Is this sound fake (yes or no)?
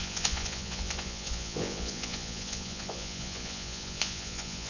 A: yes